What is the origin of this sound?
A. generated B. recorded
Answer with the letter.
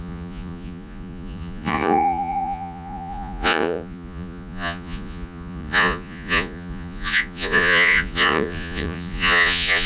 A